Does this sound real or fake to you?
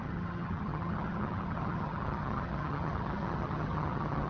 fake